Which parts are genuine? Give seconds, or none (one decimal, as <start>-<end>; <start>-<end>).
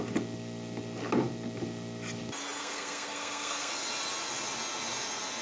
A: 0.0-2.6; 3.7-5.4